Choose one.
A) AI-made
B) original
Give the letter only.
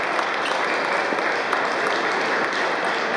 B